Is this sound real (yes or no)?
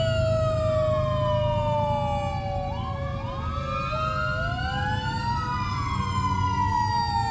yes